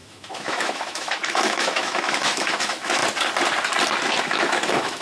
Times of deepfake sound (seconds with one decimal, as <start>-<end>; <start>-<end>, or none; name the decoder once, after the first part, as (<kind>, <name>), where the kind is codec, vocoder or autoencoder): 0.0-3.0 (autoencoder, DAC-VAE); 4.2-5.0

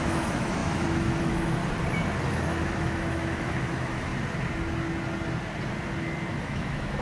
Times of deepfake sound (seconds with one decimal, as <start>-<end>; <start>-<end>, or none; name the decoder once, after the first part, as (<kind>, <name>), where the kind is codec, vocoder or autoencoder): 0.0-1.6 (autoencoder, DAC-VAE); 2.3-4.1; 6.4-7.0

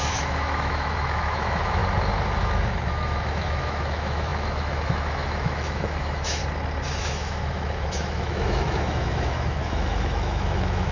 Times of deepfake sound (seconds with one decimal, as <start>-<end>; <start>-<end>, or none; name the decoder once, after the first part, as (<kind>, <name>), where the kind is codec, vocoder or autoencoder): 0.0-1.8 (autoencoder, DAC-VAE); 2.4-6.4; 7.0-10.9

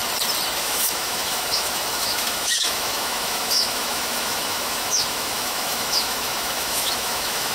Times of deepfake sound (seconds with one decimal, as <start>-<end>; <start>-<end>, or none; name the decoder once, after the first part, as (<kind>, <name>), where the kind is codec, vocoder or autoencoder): 0.6-7.5 (autoencoder, DAC-VAE)